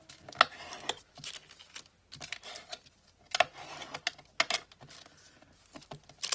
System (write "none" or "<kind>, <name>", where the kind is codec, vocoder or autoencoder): none